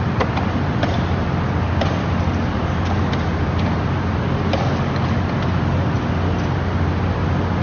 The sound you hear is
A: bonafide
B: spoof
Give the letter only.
A